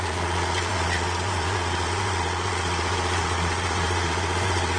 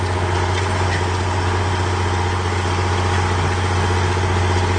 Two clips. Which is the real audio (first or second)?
second